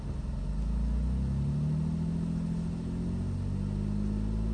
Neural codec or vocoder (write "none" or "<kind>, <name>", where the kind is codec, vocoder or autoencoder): none